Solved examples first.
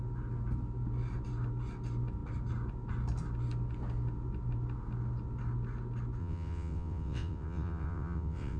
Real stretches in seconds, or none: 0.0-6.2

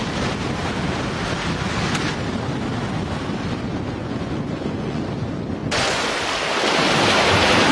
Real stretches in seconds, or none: 0.0-4.0; 5.0-5.6; 6.1-7.7